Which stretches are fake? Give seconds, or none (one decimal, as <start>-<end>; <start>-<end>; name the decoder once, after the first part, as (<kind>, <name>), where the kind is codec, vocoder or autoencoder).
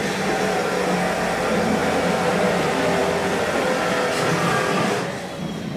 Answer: none